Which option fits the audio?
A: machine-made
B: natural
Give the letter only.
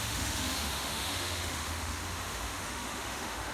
A